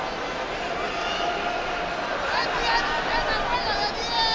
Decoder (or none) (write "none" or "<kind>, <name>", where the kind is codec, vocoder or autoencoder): none